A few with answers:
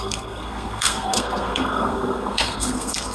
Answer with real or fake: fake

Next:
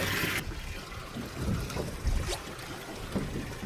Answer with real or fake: real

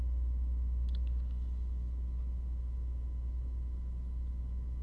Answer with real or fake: real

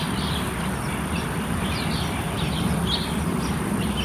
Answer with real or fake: real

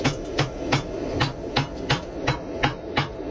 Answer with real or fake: real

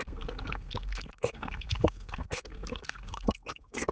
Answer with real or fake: fake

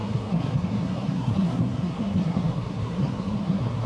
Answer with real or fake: fake